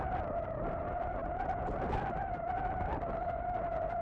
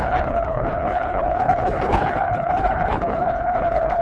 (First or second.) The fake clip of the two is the second